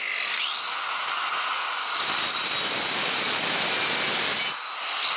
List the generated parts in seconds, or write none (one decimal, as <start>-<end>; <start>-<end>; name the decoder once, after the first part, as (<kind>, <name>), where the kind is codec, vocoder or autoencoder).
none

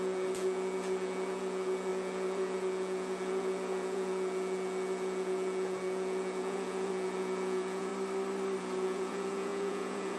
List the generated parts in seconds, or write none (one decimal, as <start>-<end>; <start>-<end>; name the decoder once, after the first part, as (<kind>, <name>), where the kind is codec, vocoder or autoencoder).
0.0-7.9 (vocoder, Vocos); 8.6-10.2

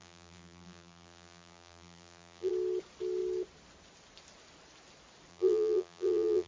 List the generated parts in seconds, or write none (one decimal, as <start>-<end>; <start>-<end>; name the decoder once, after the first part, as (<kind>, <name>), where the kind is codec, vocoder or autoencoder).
0.0-2.5 (vocoder, BigVGAN v2); 5.3-6.5

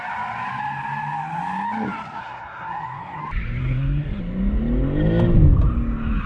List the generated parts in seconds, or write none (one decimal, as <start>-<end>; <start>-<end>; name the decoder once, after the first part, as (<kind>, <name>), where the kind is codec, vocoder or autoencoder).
2.2-3.2 (codec, SNAC); 3.6-4.2

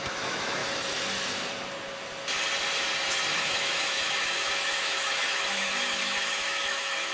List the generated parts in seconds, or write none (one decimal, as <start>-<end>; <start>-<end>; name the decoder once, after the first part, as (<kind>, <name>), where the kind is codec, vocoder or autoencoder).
0.0-0.6 (autoencoder, DAC-VAE); 3.3-7.1

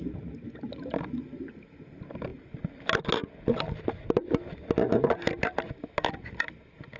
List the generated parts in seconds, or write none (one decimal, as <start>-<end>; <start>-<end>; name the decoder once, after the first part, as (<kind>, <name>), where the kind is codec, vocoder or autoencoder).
none

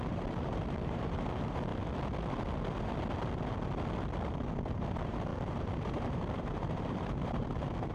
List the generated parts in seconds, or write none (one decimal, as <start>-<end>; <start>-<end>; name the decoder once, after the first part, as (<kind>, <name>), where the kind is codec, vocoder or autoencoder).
0.0-1.7 (vocoder, BigVGAN v2); 4.7-7.9

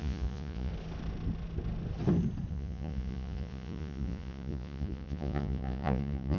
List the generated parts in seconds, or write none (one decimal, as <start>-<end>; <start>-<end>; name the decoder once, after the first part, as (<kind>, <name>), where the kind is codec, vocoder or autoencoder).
0.0-0.7 (vocoder, Vocos); 2.5-6.4